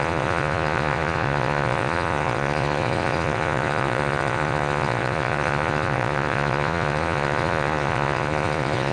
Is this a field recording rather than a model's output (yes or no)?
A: no